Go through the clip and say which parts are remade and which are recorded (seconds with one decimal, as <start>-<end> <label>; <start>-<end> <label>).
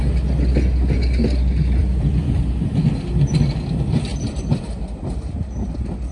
0.0-1.8 recorded; 1.8-3.1 remade; 3.1-4.1 recorded; 4.1-4.8 remade; 4.8-6.1 recorded